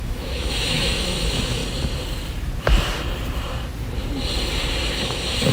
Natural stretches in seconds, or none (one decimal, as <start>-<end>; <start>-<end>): 1.6-4.9

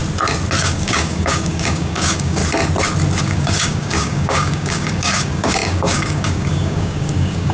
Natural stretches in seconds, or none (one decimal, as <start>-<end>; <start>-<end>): 0.0-0.6; 2.4-3.2

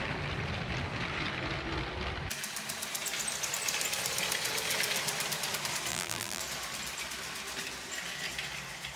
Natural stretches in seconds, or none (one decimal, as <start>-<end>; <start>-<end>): 0.0-5.9; 6.4-9.0

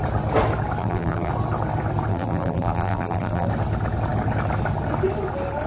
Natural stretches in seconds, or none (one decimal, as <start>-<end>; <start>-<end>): 0.0-0.8; 1.3-2.1; 3.5-5.7

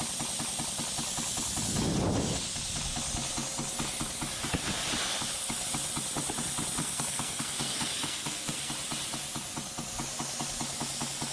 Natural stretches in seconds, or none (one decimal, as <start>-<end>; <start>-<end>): 0.0-6.8; 8.7-11.3